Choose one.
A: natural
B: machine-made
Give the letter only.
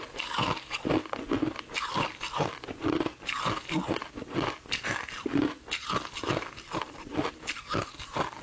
A